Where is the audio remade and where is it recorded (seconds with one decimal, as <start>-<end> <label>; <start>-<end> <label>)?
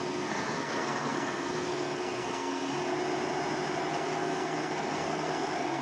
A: 0.0-2.6 remade; 2.6-3.8 recorded; 3.8-5.8 remade